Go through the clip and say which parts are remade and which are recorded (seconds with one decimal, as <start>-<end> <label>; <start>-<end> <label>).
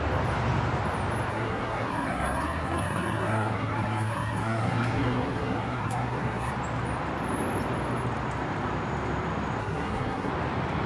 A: 0.0-1.3 recorded; 1.3-6.5 remade; 6.5-9.6 recorded; 9.6-10.3 remade; 10.3-10.9 recorded